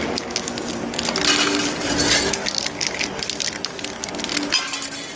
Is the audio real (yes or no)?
yes